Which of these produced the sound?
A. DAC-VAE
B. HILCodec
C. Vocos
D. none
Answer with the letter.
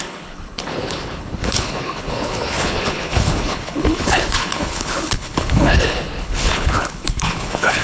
B